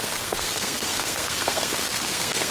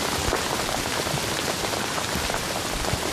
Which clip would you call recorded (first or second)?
second